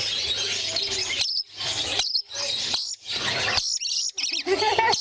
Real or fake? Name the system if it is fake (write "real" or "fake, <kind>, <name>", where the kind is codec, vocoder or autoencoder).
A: real